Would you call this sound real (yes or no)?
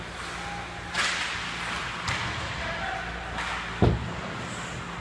yes